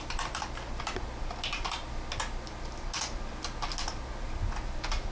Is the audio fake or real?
real